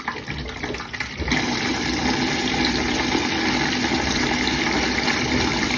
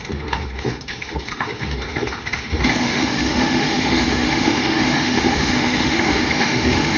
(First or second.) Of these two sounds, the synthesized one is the second